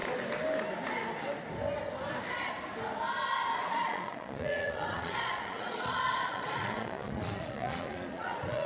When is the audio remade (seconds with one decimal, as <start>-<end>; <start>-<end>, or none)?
3.6-8.7